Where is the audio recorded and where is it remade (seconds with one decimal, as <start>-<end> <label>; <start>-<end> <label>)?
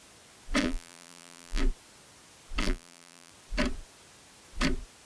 0.0-0.6 recorded; 0.6-1.6 remade; 1.6-2.6 recorded; 2.6-3.3 remade; 3.3-5.1 recorded